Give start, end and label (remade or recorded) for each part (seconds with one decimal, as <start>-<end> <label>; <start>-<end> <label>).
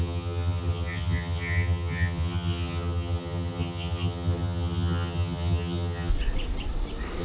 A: 0.0-6.1 remade; 6.1-7.2 recorded